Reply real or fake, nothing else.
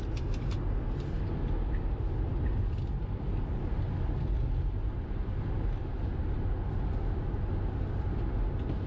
real